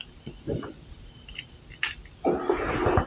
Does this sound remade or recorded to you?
recorded